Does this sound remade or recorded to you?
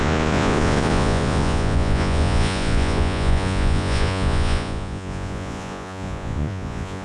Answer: remade